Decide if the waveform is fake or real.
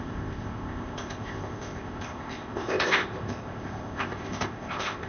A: fake